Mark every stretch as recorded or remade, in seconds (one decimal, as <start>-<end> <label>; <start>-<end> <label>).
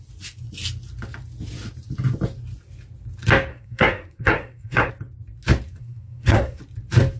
0.0-3.5 recorded; 3.5-4.9 remade; 4.9-5.8 recorded; 5.8-6.6 remade; 6.6-7.2 recorded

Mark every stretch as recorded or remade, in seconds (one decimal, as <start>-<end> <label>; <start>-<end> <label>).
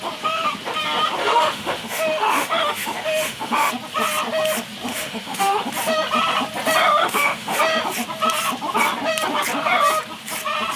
0.0-1.2 recorded; 1.2-3.7 remade; 3.7-4.9 recorded; 4.9-5.7 remade; 5.7-7.0 recorded; 7.0-7.6 remade; 7.6-10.8 recorded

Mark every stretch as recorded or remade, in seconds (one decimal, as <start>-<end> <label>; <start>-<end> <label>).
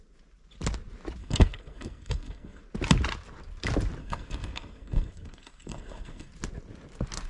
0.0-1.2 recorded; 1.2-2.6 remade; 2.6-4.0 recorded; 4.0-6.3 remade; 6.3-7.3 recorded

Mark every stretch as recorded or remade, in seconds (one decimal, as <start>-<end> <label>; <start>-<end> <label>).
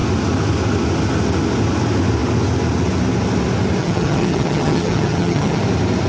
0.0-3.8 recorded; 3.8-5.6 remade; 5.6-6.1 recorded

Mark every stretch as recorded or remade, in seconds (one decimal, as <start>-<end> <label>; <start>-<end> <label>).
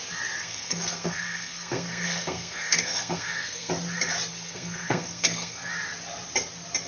0.0-0.4 recorded; 0.4-3.7 remade; 3.7-4.3 recorded; 4.3-5.7 remade; 5.7-6.9 recorded